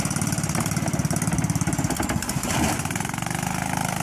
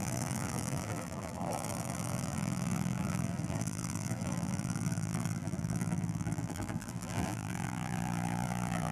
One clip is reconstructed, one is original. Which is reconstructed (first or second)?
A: second